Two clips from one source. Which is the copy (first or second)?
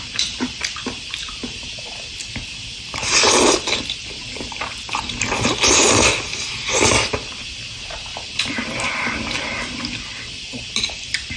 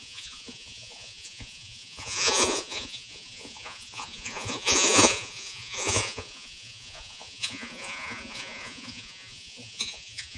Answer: second